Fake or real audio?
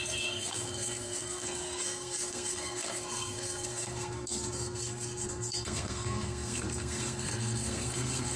fake